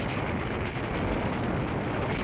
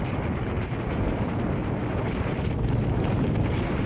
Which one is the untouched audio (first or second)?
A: first